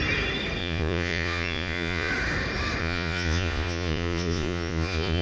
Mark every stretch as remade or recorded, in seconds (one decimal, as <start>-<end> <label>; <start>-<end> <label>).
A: 0.0-0.6 recorded; 0.6-2.1 remade; 2.1-2.8 recorded; 2.8-5.2 remade